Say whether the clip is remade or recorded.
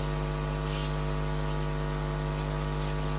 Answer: recorded